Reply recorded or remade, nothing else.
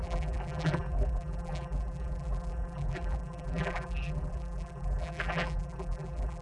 remade